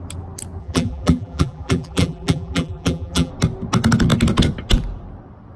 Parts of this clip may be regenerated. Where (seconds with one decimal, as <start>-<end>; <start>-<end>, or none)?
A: 0.6-3.3